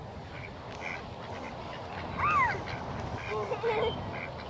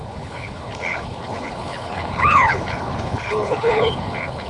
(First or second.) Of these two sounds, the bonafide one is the first